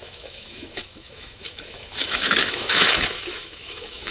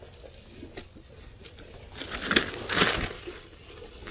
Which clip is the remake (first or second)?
first